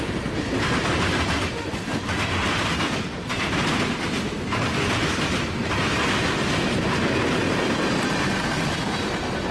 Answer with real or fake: real